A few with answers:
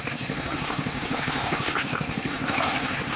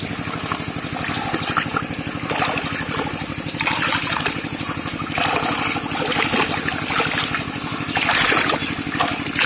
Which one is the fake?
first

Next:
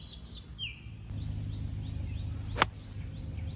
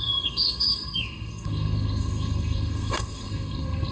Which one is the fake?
second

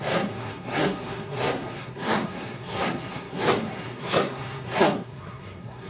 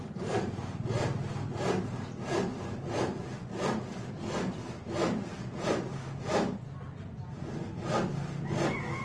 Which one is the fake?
first